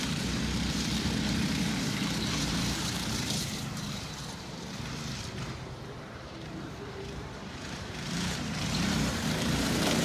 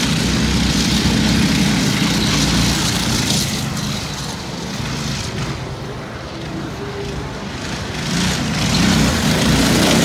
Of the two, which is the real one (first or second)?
second